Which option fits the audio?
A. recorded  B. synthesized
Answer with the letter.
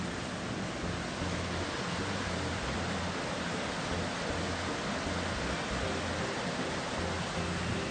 A